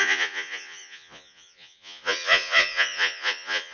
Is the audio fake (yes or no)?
yes